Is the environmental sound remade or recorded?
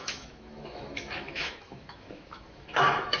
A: remade